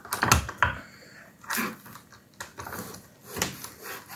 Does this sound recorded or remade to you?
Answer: recorded